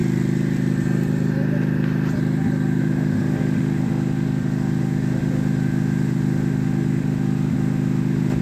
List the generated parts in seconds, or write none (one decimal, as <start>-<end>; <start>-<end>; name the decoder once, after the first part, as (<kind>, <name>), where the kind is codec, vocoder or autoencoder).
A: 2.8-8.4 (autoencoder, DAC-VAE)